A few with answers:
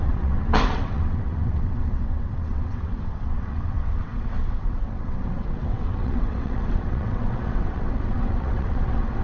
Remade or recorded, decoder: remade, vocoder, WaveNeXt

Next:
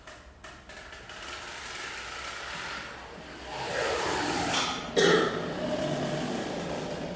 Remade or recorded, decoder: recorded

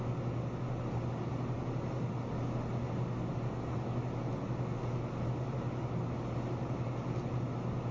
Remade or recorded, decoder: recorded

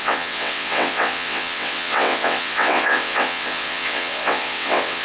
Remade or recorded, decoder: remade, vocoder, WaveNeXt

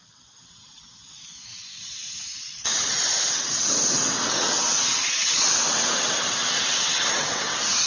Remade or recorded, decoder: remade, vocoder, WaveNeXt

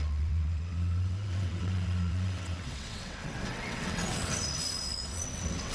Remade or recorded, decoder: remade, vocoder, WaveNeXt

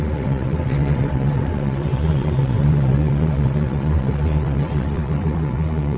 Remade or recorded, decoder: remade, vocoder, WaveNeXt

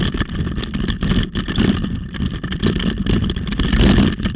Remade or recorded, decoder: recorded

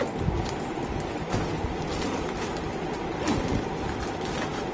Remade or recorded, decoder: recorded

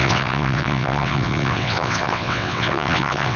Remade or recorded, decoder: remade, vocoder, WaveNeXt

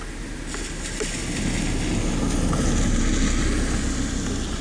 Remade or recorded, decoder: recorded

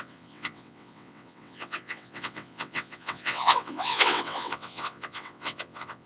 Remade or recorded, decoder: remade, vocoder, WaveNeXt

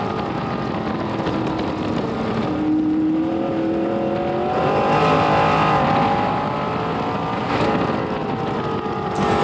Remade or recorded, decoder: recorded